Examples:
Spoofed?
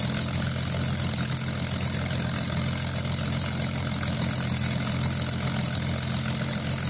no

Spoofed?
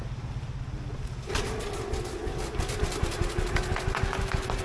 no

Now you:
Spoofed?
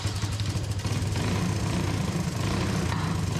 no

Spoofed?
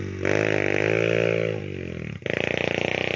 no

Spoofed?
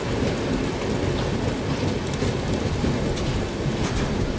no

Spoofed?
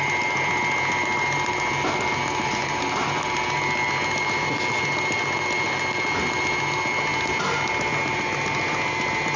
no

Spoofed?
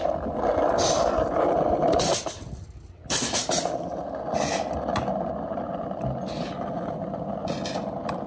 no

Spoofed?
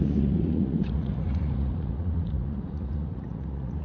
yes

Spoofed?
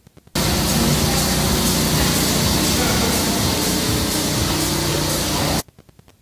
no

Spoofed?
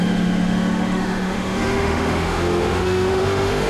yes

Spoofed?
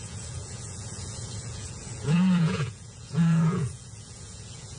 yes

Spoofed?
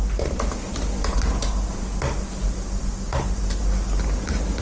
no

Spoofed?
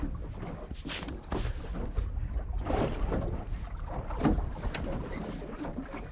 no